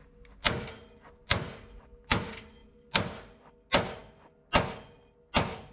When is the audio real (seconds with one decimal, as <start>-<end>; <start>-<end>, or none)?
0.0-5.7